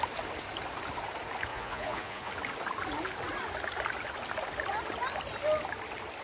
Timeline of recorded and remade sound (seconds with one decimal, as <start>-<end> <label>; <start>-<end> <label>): 0.0-1.5 recorded; 1.5-2.3 remade; 2.3-6.2 recorded